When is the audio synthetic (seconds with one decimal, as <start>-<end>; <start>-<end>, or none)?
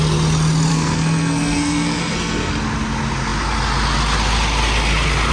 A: 0.7-2.5